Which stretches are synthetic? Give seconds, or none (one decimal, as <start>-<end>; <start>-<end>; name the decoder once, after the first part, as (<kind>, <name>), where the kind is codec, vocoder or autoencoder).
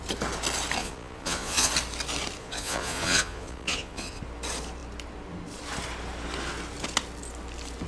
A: 0.8-1.7 (vocoder, Vocos); 2.4-4.2